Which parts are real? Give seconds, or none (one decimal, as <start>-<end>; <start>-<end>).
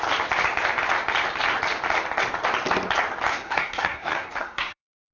0.0-3.3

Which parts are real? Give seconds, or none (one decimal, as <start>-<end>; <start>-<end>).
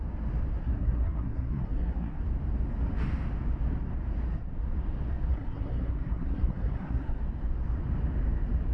0.0-0.6; 2.2-5.3; 7.2-8.7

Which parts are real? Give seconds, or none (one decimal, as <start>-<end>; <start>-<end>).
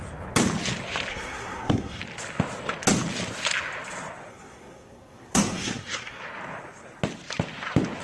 0.0-1.1; 2.0-4.3; 6.2-8.0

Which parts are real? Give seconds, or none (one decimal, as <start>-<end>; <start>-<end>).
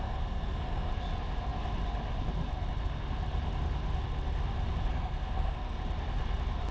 0.9-4.9; 5.8-6.7